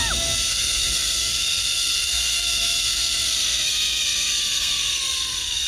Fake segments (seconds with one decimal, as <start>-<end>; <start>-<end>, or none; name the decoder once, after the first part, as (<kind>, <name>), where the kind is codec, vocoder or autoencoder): 0.5-5.7 (codec, SNAC)